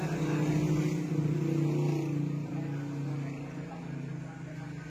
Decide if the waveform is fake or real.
real